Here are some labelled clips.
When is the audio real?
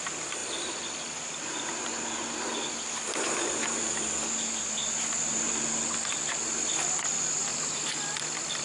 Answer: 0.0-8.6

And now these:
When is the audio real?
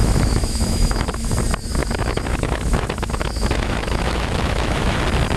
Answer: 1.3-1.8; 5.0-5.4